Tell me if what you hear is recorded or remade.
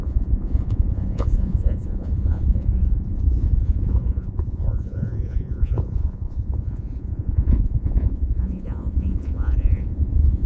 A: remade